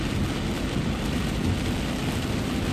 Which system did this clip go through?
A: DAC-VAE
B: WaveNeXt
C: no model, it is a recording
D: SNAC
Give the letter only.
C